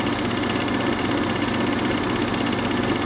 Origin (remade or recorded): recorded